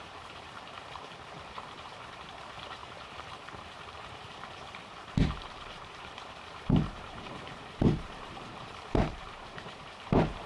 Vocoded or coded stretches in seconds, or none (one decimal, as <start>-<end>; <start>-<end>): 0.0-10.5